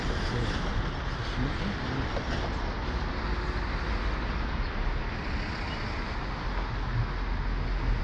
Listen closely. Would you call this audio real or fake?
real